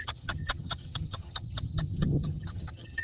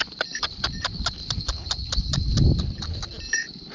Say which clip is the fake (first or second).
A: first